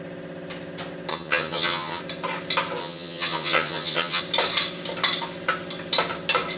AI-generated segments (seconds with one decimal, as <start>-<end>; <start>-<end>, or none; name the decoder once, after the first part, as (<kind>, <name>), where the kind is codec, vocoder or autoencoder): 1.1-2.0 (vocoder, HiFi-GAN); 2.8-4.2